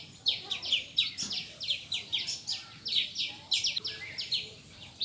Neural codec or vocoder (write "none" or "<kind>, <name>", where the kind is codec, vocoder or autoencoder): none